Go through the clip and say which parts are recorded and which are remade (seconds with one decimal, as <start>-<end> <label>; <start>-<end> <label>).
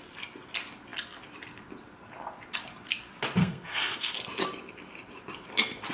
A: 0.0-3.4 recorded; 3.4-4.1 remade; 4.1-5.9 recorded